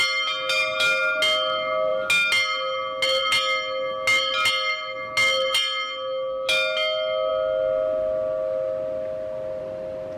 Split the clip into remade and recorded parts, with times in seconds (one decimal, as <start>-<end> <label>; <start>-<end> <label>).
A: 0.0-10.2 recorded